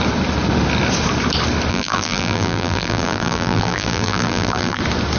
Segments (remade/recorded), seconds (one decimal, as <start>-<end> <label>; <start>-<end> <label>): 0.0-1.7 recorded; 1.7-4.8 remade; 4.8-5.2 recorded